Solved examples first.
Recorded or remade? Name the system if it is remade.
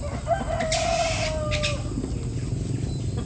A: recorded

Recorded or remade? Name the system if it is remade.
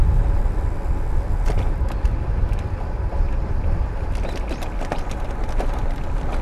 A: recorded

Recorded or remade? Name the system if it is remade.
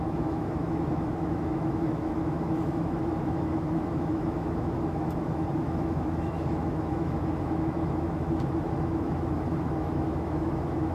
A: remade, autoencoder, DAC-VAE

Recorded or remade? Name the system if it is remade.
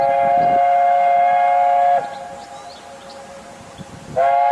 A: recorded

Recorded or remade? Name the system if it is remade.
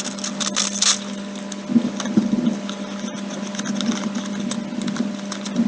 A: recorded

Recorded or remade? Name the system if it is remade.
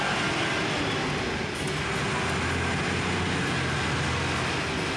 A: recorded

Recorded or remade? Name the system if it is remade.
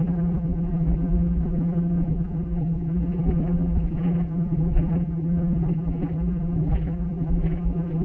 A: remade, vocoder, BigVGAN v2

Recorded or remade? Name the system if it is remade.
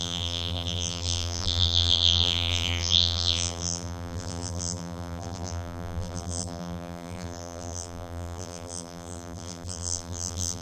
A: remade, vocoder, BigVGAN v2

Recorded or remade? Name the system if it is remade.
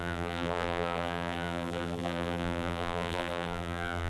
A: remade, vocoder, BigVGAN v2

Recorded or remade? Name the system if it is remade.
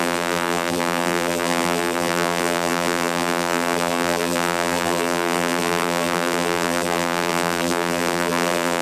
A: remade, vocoder, BigVGAN v2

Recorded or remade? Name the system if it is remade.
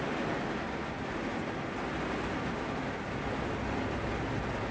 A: recorded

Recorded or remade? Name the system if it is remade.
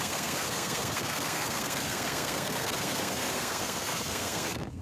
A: remade, codec, SNAC